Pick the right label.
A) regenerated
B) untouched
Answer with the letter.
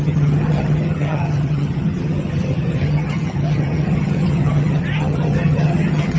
A